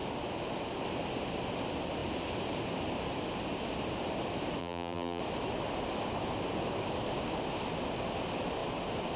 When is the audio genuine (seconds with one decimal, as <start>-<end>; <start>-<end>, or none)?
0.0-4.6; 5.2-9.2